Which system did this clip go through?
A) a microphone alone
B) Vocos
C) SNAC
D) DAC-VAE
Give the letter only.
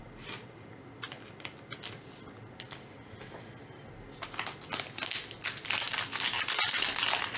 A